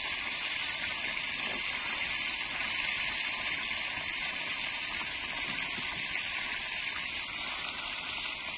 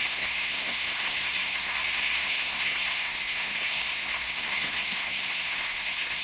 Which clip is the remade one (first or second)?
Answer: second